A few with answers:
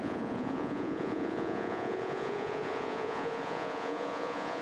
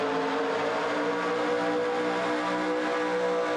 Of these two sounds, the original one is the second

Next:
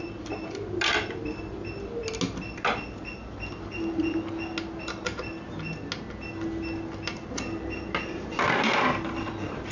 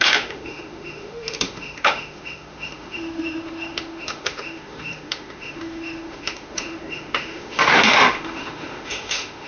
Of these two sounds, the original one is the first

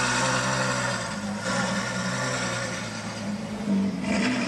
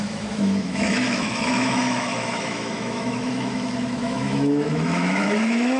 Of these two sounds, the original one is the first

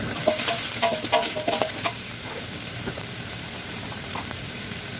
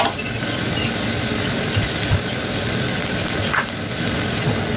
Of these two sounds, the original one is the second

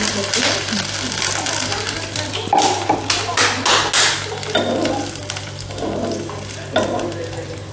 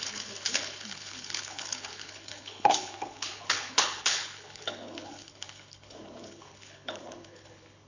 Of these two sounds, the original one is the first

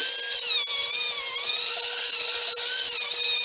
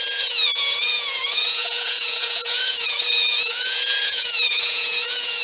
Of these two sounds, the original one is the first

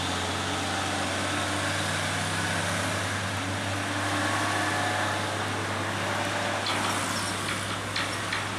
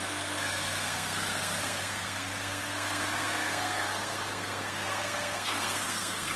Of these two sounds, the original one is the first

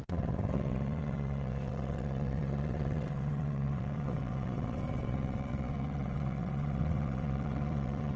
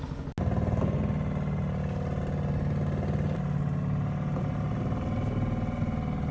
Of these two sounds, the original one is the second